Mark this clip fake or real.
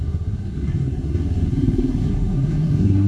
fake